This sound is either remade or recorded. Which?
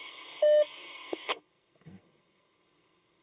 remade